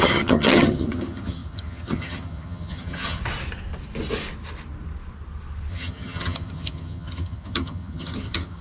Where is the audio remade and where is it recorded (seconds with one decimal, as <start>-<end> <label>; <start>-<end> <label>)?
0.0-3.2 remade; 3.2-5.7 recorded; 5.7-8.6 remade